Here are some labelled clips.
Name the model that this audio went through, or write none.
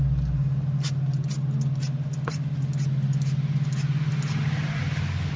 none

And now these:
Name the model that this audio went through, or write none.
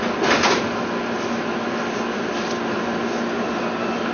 none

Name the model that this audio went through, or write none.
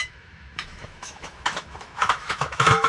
autoencoder, DAC-VAE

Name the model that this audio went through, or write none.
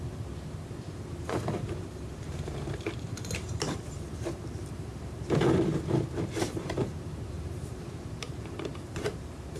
vocoder, BigVGAN v2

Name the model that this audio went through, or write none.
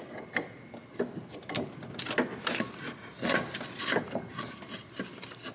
none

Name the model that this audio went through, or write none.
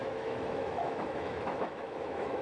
autoencoder, DAC-VAE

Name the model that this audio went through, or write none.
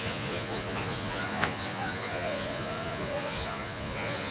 vocoder, Vocos